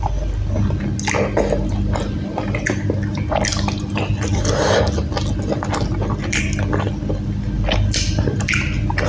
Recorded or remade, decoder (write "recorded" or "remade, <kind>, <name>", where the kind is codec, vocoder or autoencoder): recorded